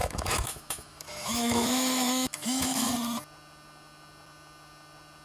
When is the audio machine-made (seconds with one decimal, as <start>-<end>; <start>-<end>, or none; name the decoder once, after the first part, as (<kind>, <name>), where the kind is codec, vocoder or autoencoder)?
0.0-2.9 (autoencoder, DAC-VAE)